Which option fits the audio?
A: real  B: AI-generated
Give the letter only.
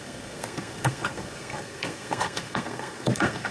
B